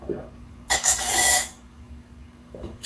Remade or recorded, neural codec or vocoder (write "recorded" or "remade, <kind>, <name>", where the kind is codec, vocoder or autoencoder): remade, codec, DAC